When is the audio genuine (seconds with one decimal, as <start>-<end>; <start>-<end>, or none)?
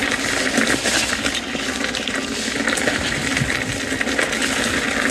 0.0-5.1